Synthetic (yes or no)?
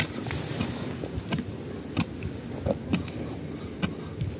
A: no